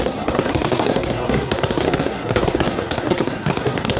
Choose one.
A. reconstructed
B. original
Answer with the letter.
A